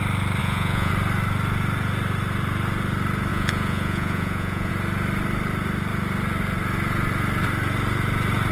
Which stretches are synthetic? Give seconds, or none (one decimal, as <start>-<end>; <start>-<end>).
0.4-0.9; 3.3-4.7

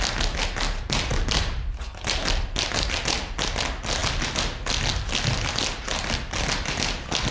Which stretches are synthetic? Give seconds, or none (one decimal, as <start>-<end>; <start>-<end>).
none

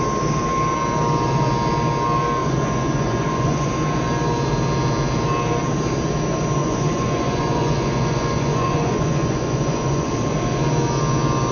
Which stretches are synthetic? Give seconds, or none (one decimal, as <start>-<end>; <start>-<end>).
2.4-3.7; 6.6-10.1

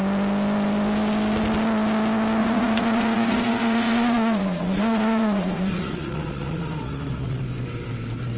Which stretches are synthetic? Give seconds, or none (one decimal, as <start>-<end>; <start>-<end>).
2.4-7.4

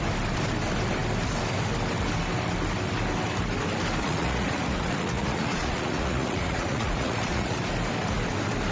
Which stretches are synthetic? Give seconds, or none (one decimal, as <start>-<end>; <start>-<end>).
4.0-7.6

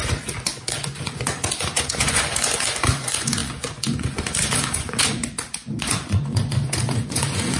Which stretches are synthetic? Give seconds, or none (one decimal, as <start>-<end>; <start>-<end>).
0.0-7.6

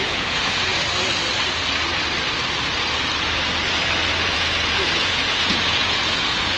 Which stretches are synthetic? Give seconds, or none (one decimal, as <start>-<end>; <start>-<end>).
0.0-0.7; 4.2-6.6